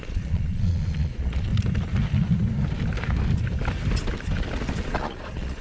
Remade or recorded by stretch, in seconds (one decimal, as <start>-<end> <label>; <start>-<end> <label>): 0.0-1.5 remade; 1.5-4.9 recorded; 4.9-5.6 remade

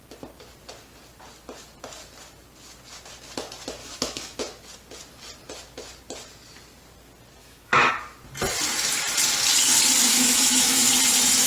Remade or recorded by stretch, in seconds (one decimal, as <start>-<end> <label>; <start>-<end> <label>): 0.0-3.8 recorded; 3.8-4.4 remade; 4.4-7.4 recorded; 7.4-7.9 remade; 7.9-10.1 recorded; 10.1-10.9 remade; 10.9-11.5 recorded

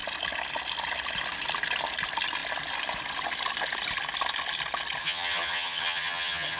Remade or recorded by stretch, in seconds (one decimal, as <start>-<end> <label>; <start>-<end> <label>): 0.0-5.0 recorded; 5.0-6.6 remade

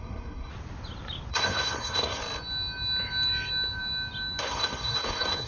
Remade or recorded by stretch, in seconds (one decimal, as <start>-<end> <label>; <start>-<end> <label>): 0.0-0.5 remade; 0.5-1.3 recorded; 1.3-2.2 remade; 2.2-4.4 recorded; 4.4-5.5 remade

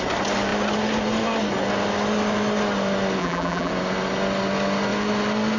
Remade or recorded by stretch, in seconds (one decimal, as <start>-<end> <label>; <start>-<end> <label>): 0.0-3.2 recorded; 3.2-3.7 remade; 3.7-5.6 recorded

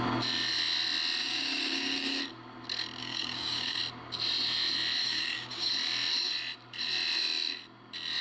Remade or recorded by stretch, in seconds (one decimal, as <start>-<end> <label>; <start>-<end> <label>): 0.0-1.2 recorded; 1.2-2.2 remade; 2.2-3.0 recorded; 3.0-3.8 remade; 3.8-5.0 recorded; 5.0-5.7 remade; 5.7-8.2 recorded

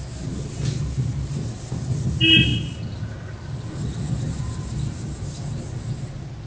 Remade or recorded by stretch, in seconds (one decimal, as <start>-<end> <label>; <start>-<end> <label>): 0.0-6.5 recorded

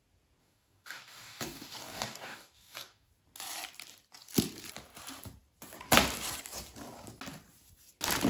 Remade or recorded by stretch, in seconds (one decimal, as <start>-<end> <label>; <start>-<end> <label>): 0.0-0.4 recorded; 0.4-3.1 remade; 3.1-8.3 recorded